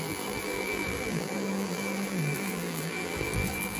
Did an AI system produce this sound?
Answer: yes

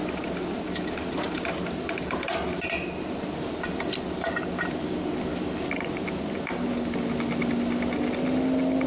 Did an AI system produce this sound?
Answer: no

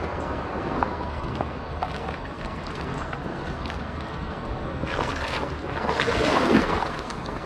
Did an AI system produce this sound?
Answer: yes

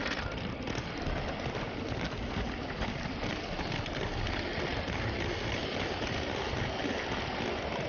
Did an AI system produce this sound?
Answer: no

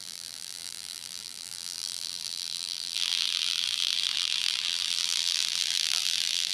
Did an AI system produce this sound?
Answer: yes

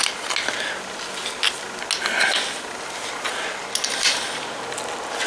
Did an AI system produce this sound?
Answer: no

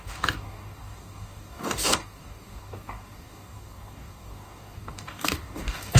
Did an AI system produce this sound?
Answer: yes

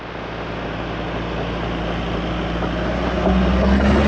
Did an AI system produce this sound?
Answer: no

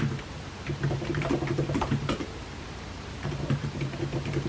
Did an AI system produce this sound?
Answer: yes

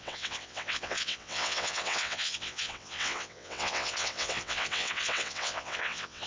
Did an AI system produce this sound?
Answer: yes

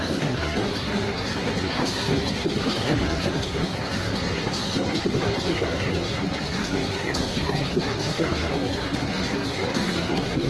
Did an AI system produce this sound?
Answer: yes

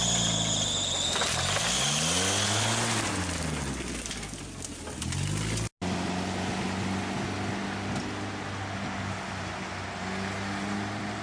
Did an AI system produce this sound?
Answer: no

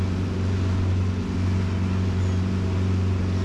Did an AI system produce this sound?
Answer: no